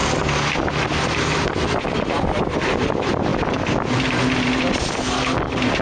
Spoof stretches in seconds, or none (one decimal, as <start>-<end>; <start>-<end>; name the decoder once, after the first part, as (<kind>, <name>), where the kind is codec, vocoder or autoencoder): none